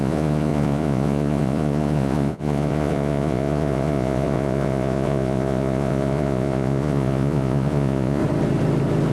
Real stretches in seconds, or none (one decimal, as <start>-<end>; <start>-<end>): 8.2-9.1